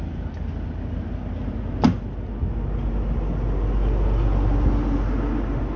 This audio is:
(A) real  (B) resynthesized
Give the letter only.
A